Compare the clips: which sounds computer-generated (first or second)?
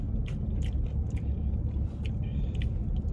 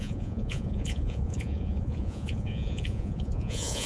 second